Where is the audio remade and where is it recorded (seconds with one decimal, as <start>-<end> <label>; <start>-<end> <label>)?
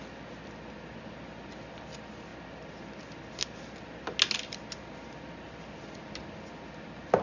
0.0-7.2 recorded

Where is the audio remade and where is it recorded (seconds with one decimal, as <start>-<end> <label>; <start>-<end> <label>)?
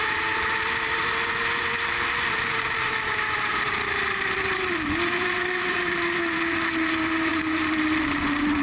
0.0-8.6 remade